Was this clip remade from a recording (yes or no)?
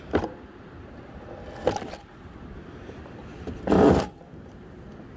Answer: no